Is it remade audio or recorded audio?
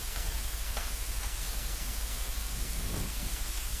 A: remade